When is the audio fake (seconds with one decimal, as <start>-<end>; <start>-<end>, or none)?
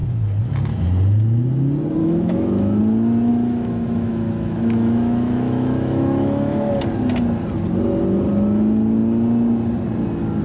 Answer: 2.0-2.8; 3.3-6.7